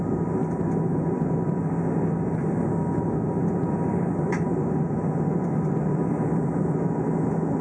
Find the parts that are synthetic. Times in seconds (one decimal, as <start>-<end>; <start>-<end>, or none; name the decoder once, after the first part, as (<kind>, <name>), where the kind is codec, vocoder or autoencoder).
none